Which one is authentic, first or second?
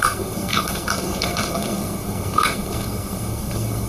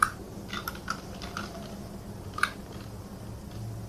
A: second